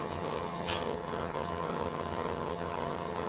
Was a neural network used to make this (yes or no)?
yes